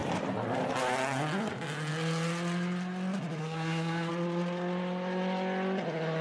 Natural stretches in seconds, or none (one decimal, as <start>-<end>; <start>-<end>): 0.0-3.4; 4.1-6.2